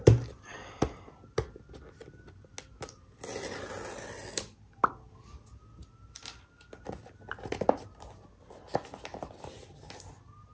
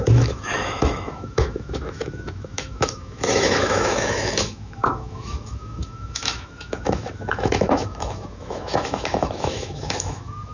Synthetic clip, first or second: second